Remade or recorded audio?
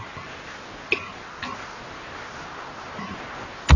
recorded